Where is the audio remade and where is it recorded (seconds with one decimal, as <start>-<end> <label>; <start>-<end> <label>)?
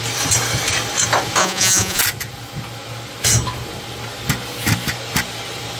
0.0-1.4 recorded; 1.4-2.0 remade; 2.0-5.8 recorded